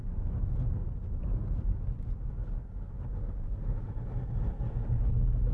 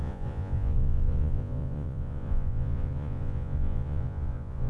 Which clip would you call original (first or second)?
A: first